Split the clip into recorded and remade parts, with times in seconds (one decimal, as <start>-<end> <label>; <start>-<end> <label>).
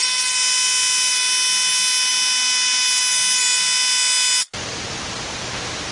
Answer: 0.0-5.9 recorded